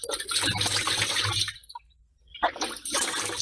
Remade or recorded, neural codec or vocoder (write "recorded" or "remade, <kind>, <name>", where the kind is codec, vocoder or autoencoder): recorded